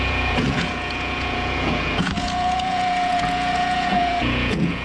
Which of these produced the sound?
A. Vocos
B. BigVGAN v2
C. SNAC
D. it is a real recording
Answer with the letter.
A